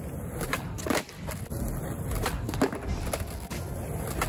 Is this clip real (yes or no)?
yes